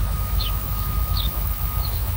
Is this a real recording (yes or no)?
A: no